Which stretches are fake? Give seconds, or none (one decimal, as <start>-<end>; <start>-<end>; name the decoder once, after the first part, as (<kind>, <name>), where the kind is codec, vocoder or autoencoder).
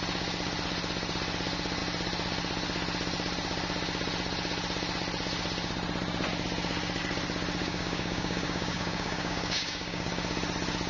7.6-10.1 (codec, DAC)